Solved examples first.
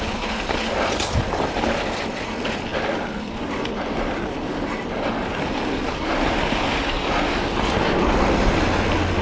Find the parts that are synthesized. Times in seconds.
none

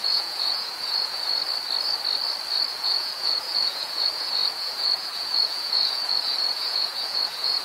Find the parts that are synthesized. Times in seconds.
0.0-1.4 (vocoder, Vocos); 2.7-7.6

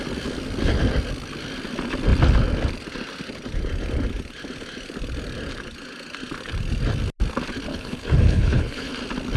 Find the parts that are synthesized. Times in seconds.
7.7-8.9 (codec, HILCodec)

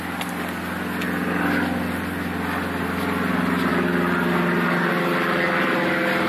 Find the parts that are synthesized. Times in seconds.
none

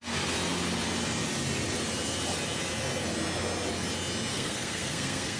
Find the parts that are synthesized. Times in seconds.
4.3-5.4 (codec, SNAC)

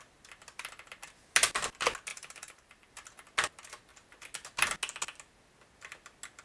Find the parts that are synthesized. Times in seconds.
2.1-2.9 (vocoder, BigVGAN v2)

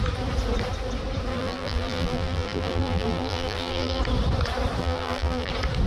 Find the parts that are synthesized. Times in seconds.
1.3-4.0 (vocoder, BigVGAN v2); 4.8-5.5